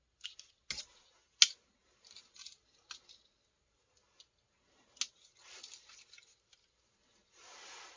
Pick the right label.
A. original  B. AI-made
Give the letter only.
A